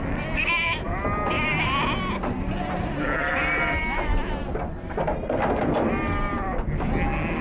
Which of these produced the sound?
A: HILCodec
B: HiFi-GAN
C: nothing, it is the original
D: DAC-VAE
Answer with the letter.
C